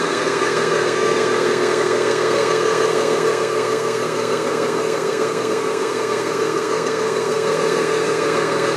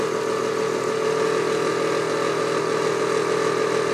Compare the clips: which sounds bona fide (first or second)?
second